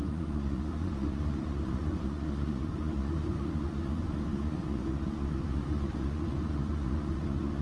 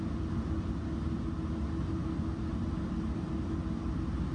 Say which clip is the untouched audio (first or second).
second